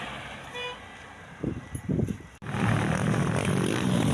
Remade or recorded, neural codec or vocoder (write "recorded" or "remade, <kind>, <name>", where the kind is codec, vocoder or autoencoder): recorded